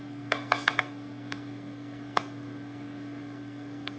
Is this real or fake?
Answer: fake